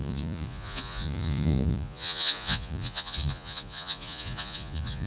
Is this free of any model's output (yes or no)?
no